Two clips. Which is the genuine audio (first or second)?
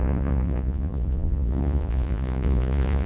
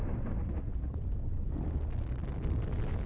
second